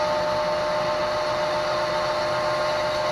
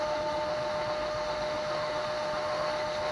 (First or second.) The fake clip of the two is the second